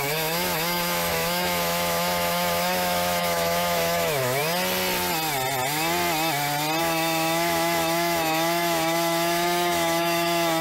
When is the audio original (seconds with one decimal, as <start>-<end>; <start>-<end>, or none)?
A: 4.4-6.8

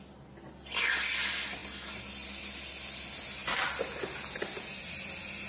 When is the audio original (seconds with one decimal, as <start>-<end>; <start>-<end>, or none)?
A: 0.0-5.5

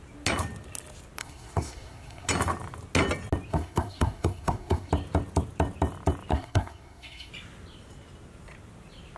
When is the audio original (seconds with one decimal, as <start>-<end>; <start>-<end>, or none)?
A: 0.0-1.2; 2.3-3.5; 4.9-6.3; 7.3-9.2